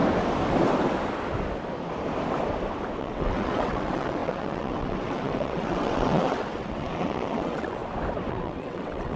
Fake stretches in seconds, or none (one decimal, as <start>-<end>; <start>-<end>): 3.0-7.8; 8.3-9.2

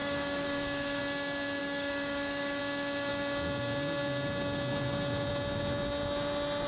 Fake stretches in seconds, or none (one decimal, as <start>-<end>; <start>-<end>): 0.0-1.0; 1.6-2.6